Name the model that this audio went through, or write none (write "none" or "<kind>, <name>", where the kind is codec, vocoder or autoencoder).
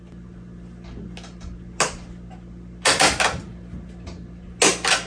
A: none